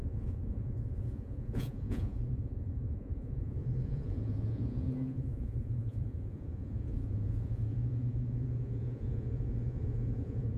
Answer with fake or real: fake